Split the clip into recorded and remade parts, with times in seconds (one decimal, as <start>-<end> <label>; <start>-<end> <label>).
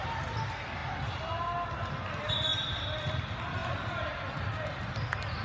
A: 0.0-2.5 recorded; 2.5-3.2 remade; 3.2-3.6 recorded; 3.6-4.9 remade; 4.9-5.4 recorded